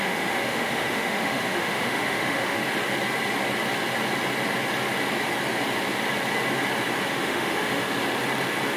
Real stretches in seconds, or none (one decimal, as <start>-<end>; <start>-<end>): 2.6-7.1; 7.8-8.8